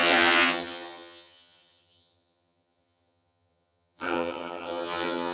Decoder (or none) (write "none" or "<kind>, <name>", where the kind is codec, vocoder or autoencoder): vocoder, HiFi-GAN